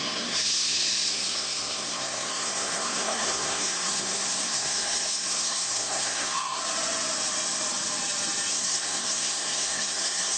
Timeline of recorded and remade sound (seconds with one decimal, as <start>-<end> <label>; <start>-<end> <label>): 0.0-6.6 remade; 6.6-8.5 recorded; 8.5-10.4 remade